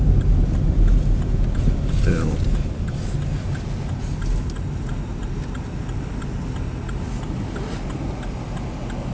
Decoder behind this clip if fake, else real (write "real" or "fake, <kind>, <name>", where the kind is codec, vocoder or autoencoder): real